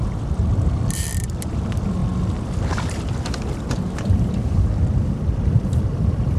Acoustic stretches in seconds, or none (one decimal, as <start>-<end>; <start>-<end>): 2.0-4.1